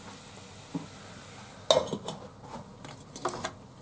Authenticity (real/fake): real